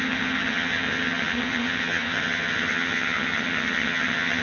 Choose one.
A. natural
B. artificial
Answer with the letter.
B